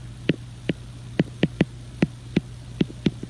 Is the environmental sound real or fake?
real